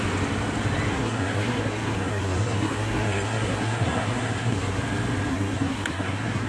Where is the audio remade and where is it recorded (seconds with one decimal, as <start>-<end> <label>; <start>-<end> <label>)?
0.0-0.9 recorded; 0.9-4.8 remade; 4.8-5.3 recorded; 5.3-6.5 remade